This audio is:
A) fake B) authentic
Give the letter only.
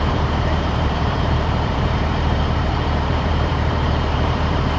A